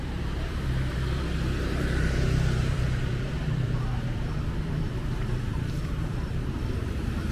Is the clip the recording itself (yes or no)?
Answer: no